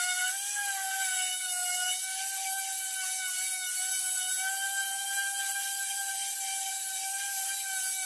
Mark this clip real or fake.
real